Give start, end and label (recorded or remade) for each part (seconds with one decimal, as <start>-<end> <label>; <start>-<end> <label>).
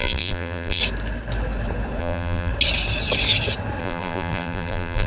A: 0.0-0.8 remade; 0.8-2.0 recorded; 2.0-2.5 remade; 2.5-3.8 recorded; 3.8-5.1 remade